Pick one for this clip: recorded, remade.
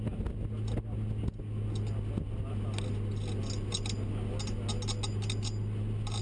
recorded